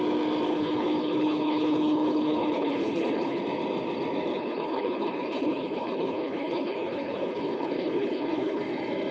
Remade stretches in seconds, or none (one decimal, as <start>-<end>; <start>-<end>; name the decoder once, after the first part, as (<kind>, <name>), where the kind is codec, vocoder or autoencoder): 0.5-3.4 (codec, HILCodec); 4.3-8.6